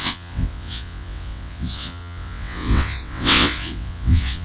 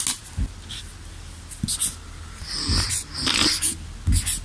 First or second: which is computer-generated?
first